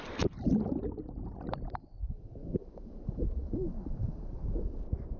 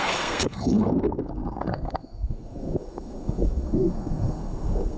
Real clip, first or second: first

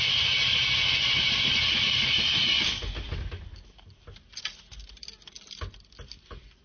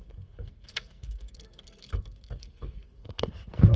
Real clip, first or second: first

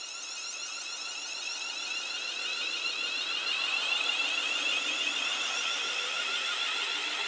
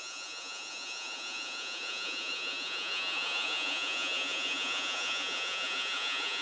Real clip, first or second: first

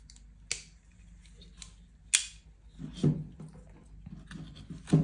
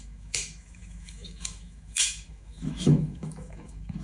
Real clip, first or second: first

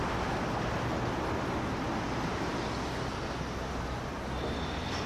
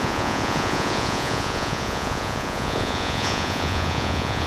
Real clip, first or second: first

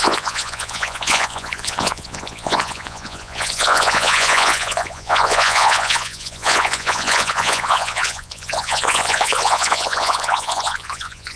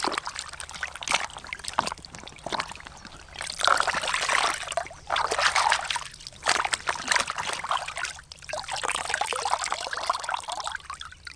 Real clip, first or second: second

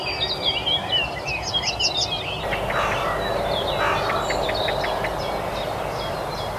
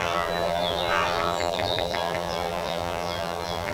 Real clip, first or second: first